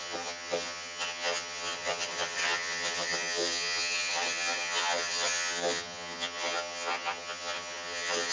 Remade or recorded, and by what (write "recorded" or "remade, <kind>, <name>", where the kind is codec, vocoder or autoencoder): remade, vocoder, HiFi-GAN